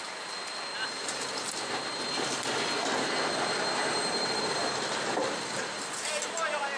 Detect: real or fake real